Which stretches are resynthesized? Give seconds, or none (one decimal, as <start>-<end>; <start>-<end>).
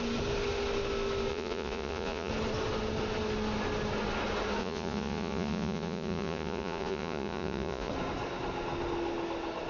1.3-2.3; 4.6-7.9